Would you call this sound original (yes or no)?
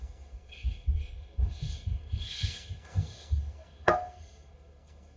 no